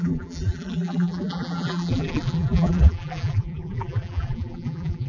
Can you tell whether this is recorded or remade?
remade